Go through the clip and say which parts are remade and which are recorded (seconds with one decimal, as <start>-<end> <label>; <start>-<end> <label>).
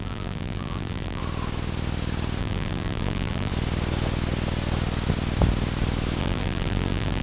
0.0-1.2 remade; 1.2-2.4 recorded; 2.4-3.5 remade; 3.5-6.2 recorded; 6.2-7.2 remade